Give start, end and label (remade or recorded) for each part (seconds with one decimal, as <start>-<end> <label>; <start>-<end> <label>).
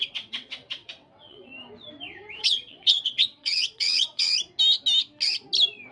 0.0-1.5 remade; 1.5-2.4 recorded; 2.4-4.3 remade; 4.3-5.9 recorded